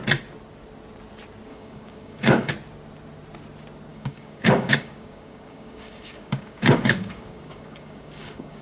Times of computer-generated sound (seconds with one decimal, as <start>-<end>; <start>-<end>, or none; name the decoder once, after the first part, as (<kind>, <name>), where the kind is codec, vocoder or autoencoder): 1.5-2.5 (codec, DAC); 3.9-8.6